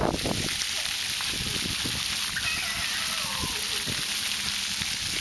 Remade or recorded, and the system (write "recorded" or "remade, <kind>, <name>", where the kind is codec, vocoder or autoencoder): recorded